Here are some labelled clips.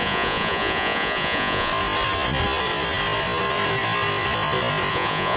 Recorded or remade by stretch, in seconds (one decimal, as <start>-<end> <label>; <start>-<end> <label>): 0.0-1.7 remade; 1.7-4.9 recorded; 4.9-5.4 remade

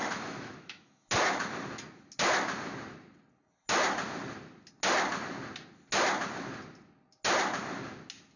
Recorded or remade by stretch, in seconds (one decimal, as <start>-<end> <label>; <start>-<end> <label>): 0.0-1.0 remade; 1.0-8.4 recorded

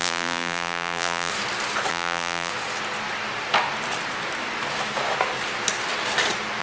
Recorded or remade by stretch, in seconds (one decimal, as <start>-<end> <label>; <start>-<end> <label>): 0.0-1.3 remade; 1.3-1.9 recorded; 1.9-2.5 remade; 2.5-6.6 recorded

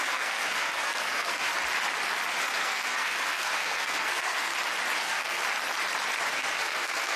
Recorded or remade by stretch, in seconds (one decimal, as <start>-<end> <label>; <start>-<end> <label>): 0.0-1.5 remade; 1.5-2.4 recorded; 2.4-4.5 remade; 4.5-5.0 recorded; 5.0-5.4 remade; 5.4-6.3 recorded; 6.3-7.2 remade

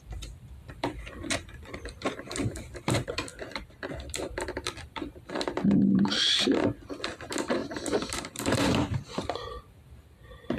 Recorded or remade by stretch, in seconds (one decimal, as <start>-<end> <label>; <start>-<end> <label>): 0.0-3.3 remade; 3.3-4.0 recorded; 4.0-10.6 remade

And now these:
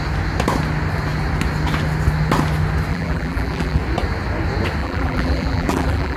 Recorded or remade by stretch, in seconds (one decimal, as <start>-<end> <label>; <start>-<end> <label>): 0.0-2.9 recorded; 2.9-3.8 remade; 3.8-4.8 recorded; 4.8-6.2 remade